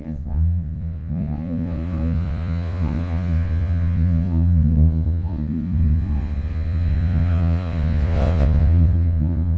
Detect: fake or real fake